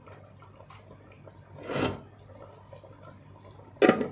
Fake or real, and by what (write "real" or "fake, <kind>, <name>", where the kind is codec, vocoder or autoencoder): real